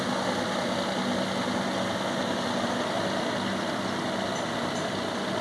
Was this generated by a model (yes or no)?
no